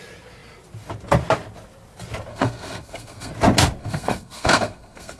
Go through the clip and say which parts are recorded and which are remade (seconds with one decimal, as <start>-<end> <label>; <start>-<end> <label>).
0.0-2.3 recorded; 2.3-3.3 remade; 3.3-3.8 recorded; 3.8-5.2 remade